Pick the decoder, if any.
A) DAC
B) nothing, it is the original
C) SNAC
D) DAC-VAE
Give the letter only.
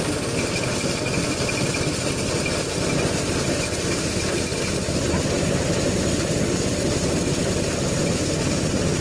B